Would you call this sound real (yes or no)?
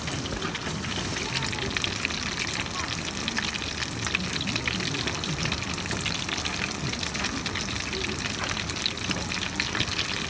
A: yes